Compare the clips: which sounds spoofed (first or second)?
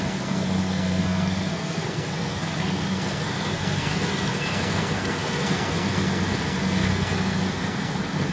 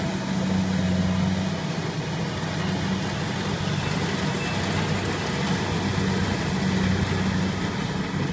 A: first